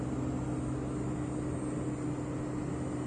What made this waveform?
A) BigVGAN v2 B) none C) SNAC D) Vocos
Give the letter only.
B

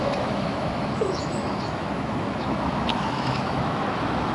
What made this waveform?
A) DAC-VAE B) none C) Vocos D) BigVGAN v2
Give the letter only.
A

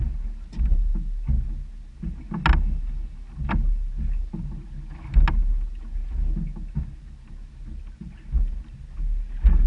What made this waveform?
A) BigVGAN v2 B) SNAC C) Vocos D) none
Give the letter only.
D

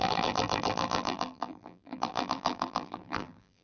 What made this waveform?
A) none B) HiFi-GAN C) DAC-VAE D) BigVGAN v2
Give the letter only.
D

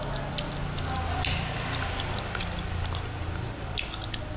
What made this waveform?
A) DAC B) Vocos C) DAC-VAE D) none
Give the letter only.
D